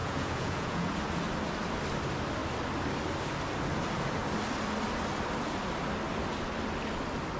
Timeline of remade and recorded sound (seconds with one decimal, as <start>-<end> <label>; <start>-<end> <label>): 0.0-0.9 remade; 0.9-7.4 recorded

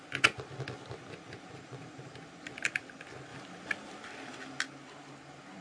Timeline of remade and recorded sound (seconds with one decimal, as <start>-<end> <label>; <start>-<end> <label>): 0.0-5.6 recorded

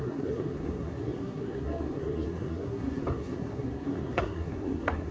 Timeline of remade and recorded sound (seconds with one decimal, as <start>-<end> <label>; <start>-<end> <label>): 0.0-5.1 remade

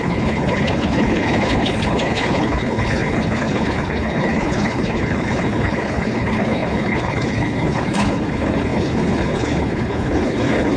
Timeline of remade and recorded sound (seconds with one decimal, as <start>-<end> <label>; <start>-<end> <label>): 0.0-10.8 remade

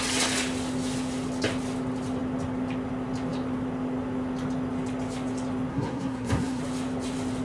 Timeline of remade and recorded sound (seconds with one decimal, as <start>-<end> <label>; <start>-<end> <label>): 0.0-5.7 recorded; 5.7-6.6 remade; 6.6-7.4 recorded